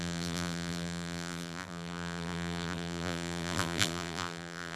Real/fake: fake